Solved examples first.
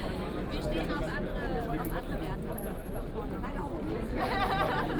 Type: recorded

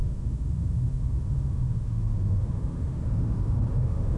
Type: remade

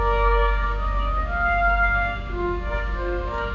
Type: remade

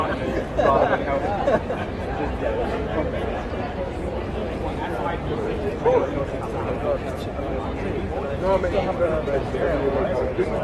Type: remade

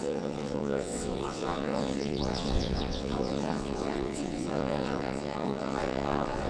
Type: remade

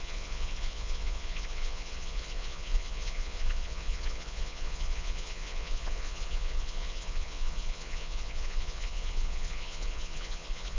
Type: remade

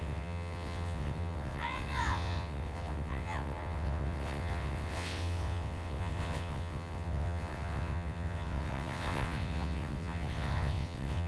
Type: remade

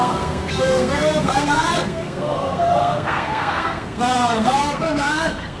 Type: remade